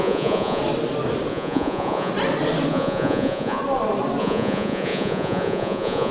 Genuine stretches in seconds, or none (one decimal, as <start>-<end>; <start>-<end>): 0.6-1.3; 2.1-2.7; 3.6-4.2